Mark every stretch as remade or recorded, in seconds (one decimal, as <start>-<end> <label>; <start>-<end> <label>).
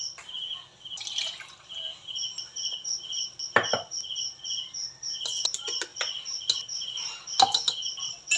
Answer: 0.0-8.4 recorded